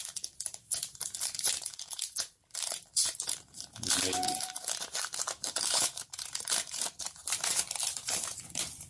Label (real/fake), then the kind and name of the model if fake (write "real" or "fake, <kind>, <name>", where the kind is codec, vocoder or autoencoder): fake, vocoder, BigVGAN v2